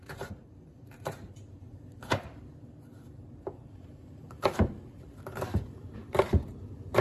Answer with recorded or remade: remade